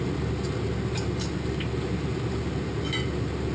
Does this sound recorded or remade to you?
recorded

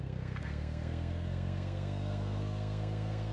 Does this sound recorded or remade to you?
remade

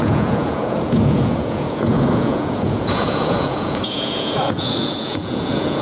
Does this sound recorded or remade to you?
remade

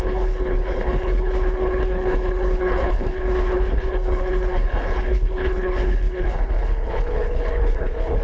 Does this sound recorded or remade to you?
remade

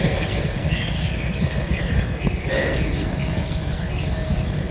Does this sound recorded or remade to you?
remade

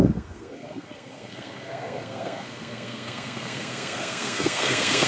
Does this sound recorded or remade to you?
remade